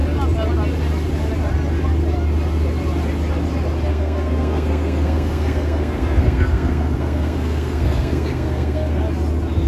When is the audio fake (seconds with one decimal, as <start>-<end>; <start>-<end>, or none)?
3.9-9.0